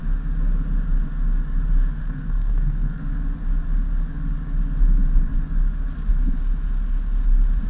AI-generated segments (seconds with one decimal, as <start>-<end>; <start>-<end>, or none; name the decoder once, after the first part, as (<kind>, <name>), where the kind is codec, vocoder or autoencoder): 2.0-3.0 (codec, SNAC)